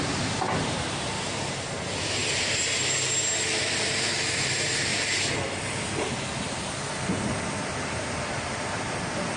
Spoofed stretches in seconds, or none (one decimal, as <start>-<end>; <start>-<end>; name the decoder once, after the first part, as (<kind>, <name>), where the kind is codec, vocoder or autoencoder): none